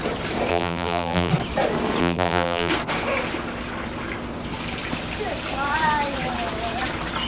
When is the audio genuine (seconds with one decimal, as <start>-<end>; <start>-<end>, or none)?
0.0-0.5; 1.3-2.0; 2.7-7.3